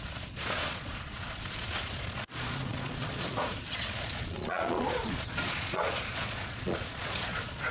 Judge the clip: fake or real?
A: fake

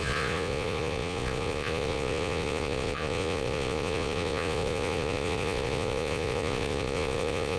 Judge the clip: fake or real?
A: fake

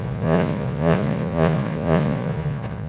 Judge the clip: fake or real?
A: fake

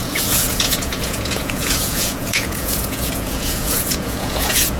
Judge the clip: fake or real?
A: fake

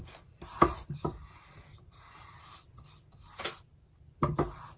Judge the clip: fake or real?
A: real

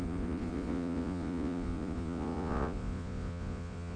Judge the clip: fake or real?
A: fake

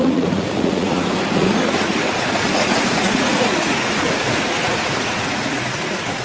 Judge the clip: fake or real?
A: fake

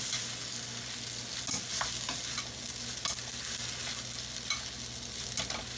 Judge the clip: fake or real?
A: real